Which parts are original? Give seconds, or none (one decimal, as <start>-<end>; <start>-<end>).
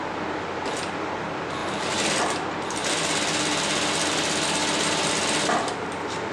0.0-6.3